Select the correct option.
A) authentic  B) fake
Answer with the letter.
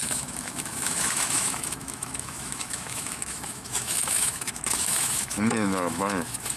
B